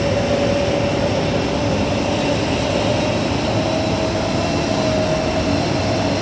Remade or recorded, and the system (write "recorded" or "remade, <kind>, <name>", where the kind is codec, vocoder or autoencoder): recorded